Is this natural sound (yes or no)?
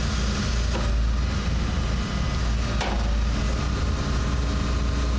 yes